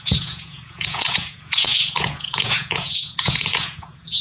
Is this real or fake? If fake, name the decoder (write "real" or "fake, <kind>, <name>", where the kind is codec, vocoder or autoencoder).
fake, vocoder, Vocos